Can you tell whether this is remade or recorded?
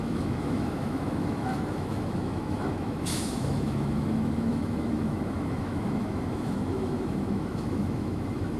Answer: remade